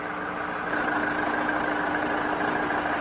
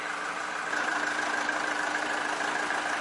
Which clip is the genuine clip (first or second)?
first